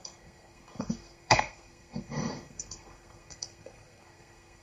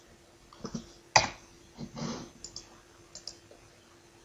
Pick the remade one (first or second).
first